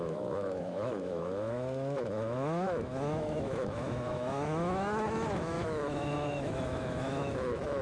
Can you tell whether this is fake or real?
fake